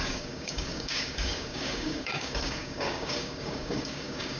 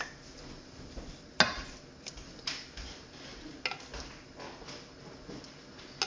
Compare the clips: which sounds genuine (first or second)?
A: second